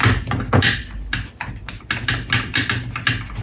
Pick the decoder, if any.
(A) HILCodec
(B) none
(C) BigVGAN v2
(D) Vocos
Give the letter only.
B